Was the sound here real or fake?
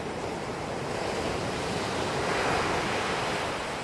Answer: fake